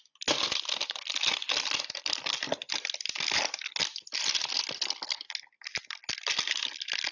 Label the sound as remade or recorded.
recorded